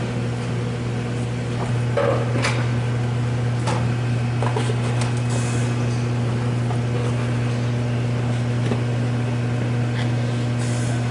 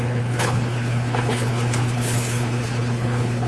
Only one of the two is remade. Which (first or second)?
second